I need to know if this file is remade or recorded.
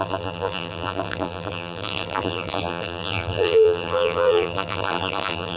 remade